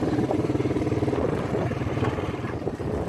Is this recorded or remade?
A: remade